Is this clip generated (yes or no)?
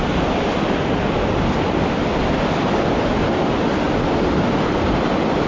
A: no